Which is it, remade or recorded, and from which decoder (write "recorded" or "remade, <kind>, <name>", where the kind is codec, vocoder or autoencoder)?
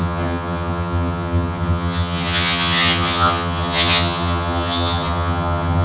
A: remade, vocoder, HiFi-GAN